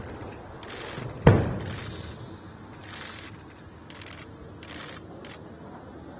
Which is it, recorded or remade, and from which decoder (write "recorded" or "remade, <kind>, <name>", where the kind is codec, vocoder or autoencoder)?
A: recorded